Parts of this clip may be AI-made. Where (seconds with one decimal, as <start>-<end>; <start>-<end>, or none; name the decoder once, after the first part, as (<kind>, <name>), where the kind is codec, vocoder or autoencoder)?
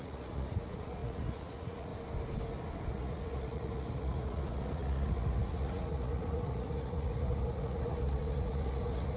0.0-1.9 (vocoder, Vocos); 2.9-9.2